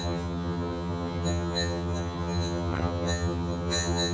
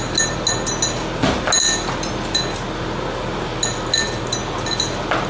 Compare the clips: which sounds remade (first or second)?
first